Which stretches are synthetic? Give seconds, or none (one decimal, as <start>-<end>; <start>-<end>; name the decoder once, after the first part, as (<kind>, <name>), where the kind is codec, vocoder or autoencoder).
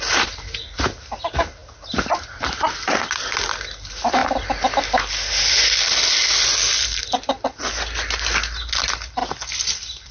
none